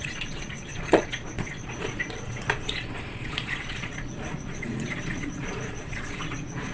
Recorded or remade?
remade